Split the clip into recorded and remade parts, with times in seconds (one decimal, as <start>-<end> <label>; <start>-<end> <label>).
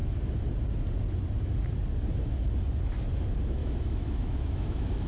0.0-3.6 recorded; 3.6-5.1 remade